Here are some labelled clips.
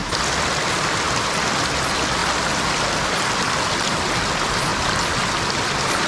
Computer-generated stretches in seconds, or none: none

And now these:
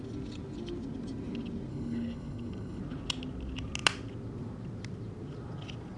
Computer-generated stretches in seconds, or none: 1.7-2.8 (codec, HILCodec)

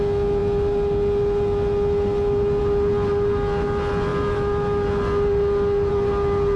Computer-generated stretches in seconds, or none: none

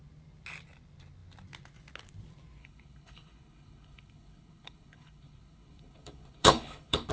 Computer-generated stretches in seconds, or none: 2.6-7.1 (codec, HILCodec)

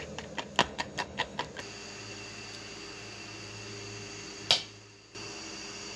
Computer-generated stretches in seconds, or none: 0.6-1.4 (codec, HILCodec)